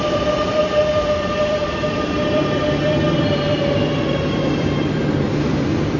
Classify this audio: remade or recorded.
remade